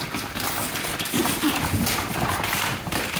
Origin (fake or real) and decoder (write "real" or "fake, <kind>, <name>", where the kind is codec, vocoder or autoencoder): fake, vocoder, BigVGAN v2